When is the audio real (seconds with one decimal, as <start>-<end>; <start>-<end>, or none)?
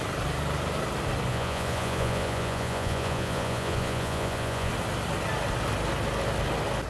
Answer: 0.0-1.3; 4.7-6.9